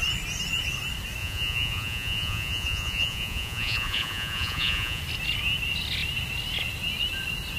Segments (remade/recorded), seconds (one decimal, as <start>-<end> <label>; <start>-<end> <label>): 0.0-1.2 recorded; 1.2-5.0 remade; 5.0-7.6 recorded